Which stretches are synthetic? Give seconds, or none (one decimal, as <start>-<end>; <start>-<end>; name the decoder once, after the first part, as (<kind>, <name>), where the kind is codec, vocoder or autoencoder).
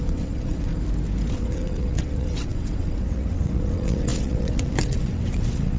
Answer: 0.0-0.7 (vocoder, WaveNeXt); 1.3-5.8